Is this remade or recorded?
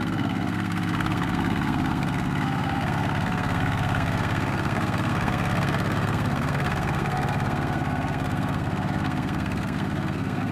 remade